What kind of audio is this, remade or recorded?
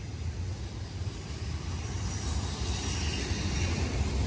recorded